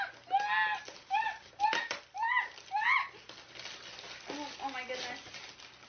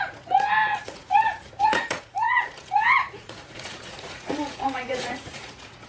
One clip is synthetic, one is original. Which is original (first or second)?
first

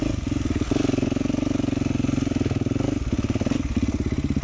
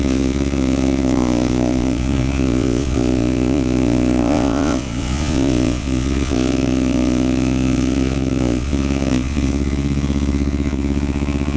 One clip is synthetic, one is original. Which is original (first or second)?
first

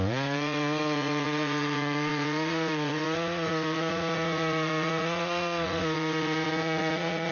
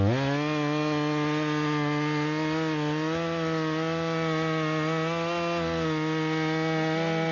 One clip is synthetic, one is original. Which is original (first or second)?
second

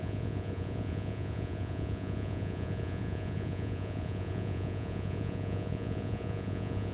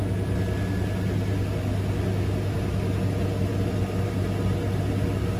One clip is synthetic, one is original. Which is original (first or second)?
second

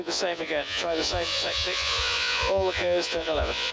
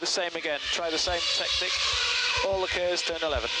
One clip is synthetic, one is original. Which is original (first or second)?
second